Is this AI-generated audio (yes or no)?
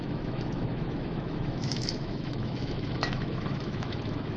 yes